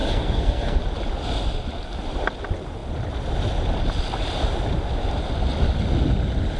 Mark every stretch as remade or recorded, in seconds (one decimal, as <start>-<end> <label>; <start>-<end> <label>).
0.0-0.8 remade; 0.8-6.6 recorded